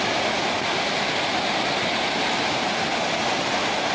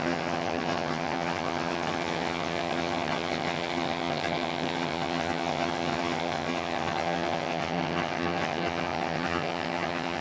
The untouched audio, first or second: first